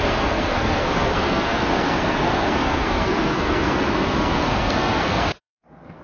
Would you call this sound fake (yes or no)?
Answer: yes